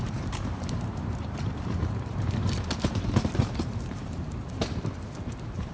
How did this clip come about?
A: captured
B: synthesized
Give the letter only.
B